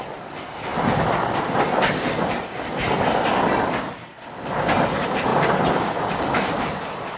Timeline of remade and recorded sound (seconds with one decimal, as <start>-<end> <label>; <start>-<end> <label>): 0.0-7.2 recorded